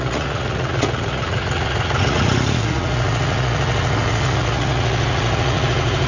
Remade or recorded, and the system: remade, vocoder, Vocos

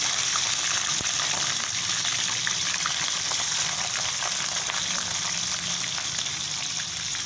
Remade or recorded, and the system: recorded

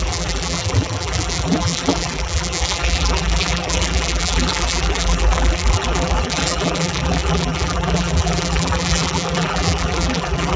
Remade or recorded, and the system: remade, vocoder, BigVGAN v2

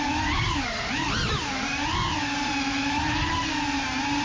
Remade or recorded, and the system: remade, vocoder, BigVGAN v2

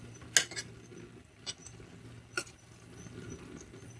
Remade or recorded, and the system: recorded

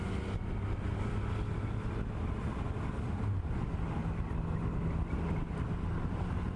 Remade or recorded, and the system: recorded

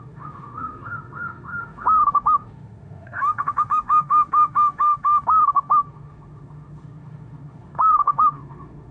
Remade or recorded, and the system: remade, autoencoder, DAC-VAE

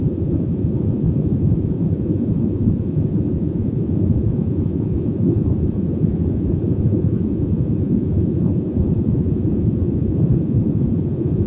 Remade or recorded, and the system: remade, vocoder, Vocos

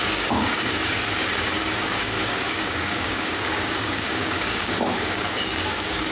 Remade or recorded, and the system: remade, codec, DAC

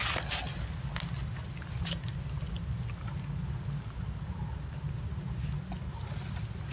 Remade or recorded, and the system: recorded